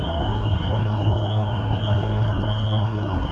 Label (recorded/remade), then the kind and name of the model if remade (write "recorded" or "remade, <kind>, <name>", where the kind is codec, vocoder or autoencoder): remade, codec, SNAC